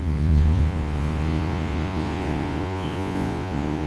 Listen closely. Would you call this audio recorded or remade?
remade